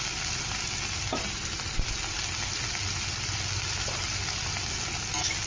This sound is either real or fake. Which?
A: real